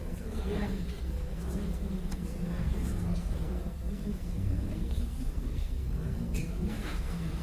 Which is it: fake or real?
fake